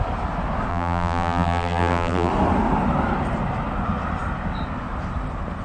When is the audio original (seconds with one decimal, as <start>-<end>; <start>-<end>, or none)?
0.0-0.7; 2.3-5.6